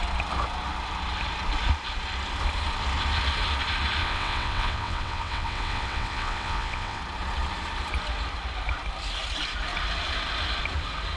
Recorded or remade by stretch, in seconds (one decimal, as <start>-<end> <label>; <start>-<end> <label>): 0.0-4.0 recorded; 4.0-7.0 remade; 7.0-11.2 recorded